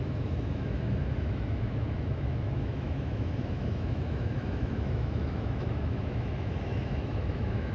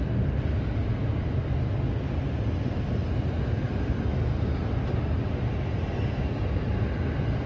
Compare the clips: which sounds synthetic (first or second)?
first